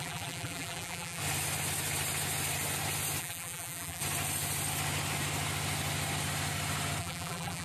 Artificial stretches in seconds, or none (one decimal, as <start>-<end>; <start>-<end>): 0.0-1.2; 3.2-4.0; 7.0-7.6